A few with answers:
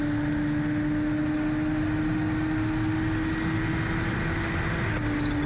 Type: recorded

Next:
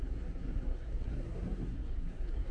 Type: remade